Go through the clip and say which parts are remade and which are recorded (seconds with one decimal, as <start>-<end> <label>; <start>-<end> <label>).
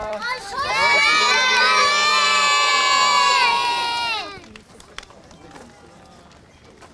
0.0-0.7 remade; 0.7-6.9 recorded